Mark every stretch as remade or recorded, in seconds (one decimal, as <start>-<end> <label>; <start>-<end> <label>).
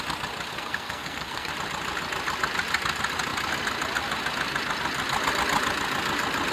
0.0-0.5 recorded; 0.5-1.5 remade; 1.5-6.5 recorded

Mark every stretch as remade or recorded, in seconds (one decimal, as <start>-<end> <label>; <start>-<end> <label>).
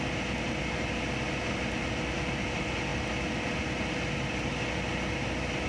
0.0-5.7 recorded